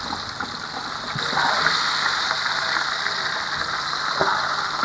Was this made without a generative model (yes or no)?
yes